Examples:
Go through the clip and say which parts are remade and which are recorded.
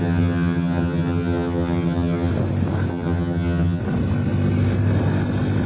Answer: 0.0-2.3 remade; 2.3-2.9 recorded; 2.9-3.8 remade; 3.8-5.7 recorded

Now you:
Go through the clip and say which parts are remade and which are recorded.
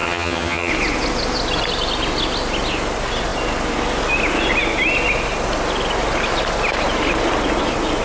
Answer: 0.0-0.7 remade; 0.7-8.0 recorded